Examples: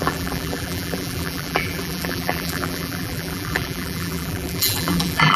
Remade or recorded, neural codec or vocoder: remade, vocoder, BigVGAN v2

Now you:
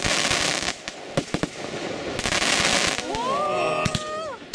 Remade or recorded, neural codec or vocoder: recorded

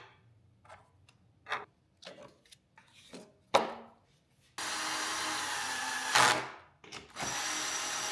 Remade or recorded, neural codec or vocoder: recorded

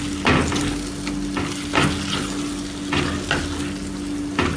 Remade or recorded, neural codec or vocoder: recorded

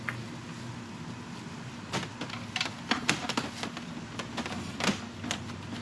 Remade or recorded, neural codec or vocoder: recorded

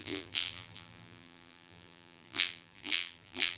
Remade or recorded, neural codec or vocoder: remade, vocoder, BigVGAN v2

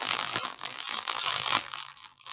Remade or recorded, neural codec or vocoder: remade, vocoder, BigVGAN v2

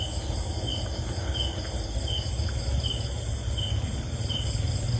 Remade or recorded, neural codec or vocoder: recorded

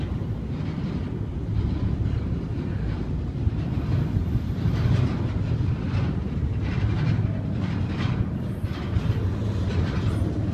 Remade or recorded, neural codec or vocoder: recorded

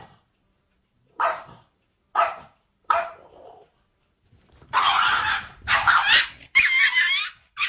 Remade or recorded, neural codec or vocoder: remade, vocoder, BigVGAN v2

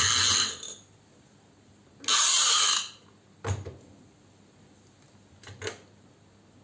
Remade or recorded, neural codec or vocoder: recorded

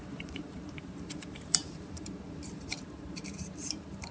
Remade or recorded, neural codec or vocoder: remade, vocoder, BigVGAN v2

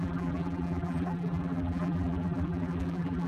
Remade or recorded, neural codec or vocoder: remade, vocoder, BigVGAN v2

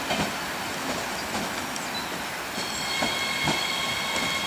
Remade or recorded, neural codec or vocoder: recorded